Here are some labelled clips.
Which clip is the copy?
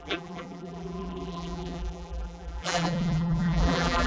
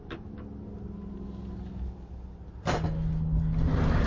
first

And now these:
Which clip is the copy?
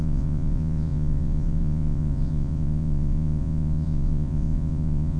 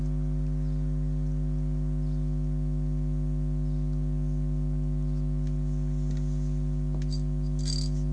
first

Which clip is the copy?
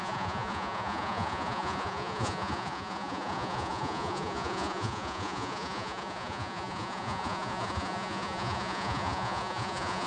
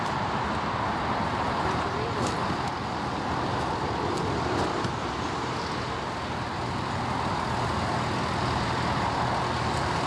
first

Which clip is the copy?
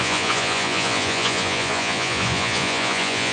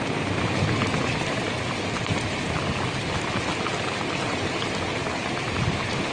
first